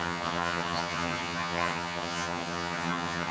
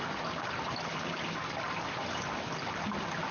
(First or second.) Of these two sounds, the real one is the second